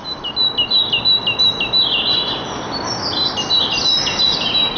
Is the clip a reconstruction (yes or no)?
no